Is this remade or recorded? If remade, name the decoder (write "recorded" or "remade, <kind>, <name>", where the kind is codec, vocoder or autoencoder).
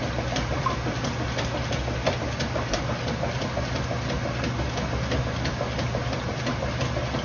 recorded